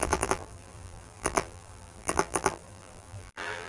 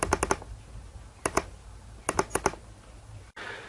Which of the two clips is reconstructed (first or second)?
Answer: first